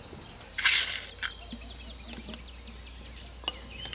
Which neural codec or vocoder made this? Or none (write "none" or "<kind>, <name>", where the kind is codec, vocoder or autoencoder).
none